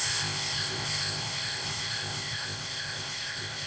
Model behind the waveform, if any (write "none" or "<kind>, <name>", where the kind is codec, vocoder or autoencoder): codec, ZipCodec